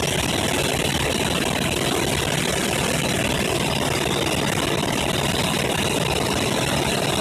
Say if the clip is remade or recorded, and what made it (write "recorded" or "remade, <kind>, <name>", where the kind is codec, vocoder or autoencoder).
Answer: recorded